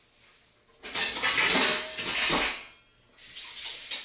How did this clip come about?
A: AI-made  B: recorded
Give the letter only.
B